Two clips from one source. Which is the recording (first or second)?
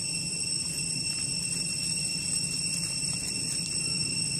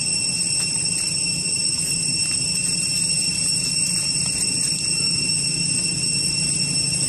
first